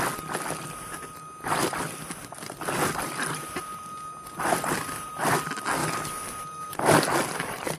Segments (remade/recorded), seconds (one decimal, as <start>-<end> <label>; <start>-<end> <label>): 0.0-7.8 recorded